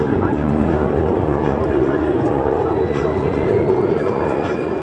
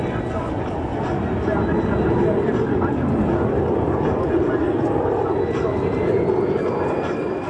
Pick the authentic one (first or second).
second